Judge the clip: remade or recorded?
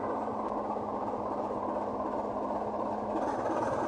recorded